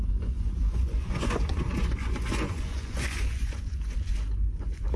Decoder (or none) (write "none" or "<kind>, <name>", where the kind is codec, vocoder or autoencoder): vocoder, Vocos